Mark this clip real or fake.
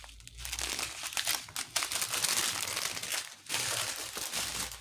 real